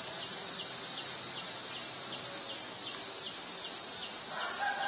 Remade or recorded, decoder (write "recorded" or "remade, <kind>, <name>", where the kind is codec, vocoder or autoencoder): recorded